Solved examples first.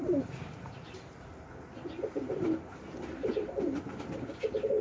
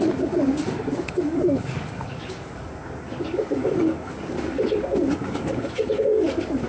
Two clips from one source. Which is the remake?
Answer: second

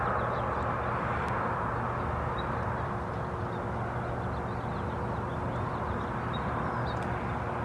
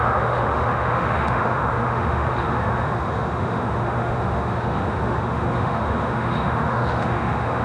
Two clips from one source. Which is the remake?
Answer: second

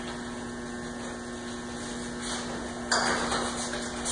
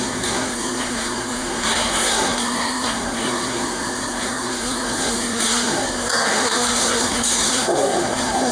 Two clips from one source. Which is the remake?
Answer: second